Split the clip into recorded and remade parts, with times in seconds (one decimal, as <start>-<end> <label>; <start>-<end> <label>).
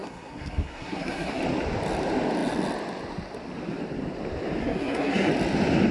0.0-1.4 remade; 1.4-4.6 recorded; 4.6-5.3 remade; 5.3-5.9 recorded